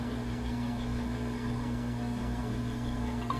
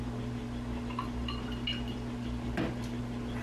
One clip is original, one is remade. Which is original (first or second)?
second